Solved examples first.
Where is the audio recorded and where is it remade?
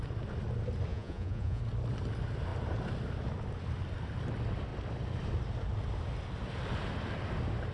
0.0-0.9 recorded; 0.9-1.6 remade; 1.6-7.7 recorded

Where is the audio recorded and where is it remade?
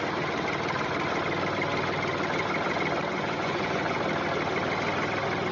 0.0-3.1 recorded; 3.1-4.0 remade; 4.0-5.5 recorded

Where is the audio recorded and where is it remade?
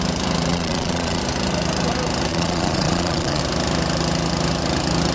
0.0-0.5 recorded; 0.5-1.2 remade; 1.2-2.3 recorded; 2.3-3.4 remade; 3.4-5.1 recorded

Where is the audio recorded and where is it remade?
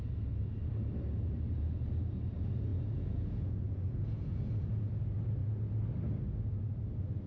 0.0-2.7 recorded; 2.7-5.0 remade; 5.0-7.3 recorded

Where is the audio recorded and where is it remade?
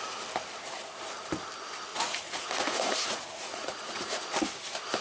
0.0-1.9 recorded; 1.9-4.2 remade; 4.2-5.0 recorded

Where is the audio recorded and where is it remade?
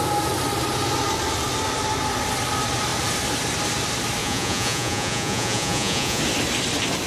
0.0-4.2 recorded; 4.2-6.2 remade; 6.2-7.1 recorded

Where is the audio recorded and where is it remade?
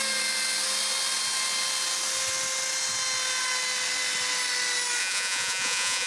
0.0-5.0 recorded; 5.0-6.1 remade